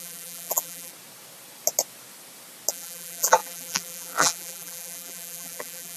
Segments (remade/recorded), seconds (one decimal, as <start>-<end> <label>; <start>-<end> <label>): 0.0-0.9 remade; 0.9-2.7 recorded; 2.7-6.0 remade